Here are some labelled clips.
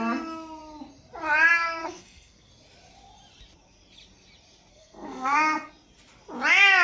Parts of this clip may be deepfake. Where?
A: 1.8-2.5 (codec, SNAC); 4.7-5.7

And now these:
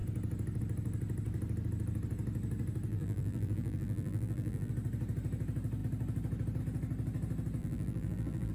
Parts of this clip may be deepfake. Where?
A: 2.9-4.7 (vocoder, BigVGAN v2); 7.6-8.5

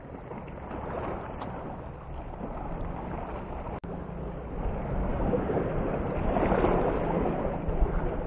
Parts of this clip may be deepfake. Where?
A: 5.1-5.6 (codec, DAC)

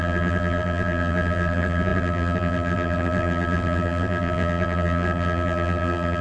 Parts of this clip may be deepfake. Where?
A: 0.0-6.2 (vocoder, BigVGAN v2)

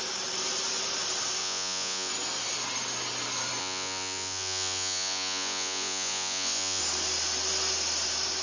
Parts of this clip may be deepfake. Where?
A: 1.4-2.1 (vocoder, Vocos); 3.6-6.8

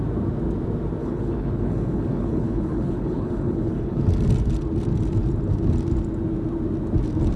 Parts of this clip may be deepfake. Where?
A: 1.0-4.0 (codec, HILCodec)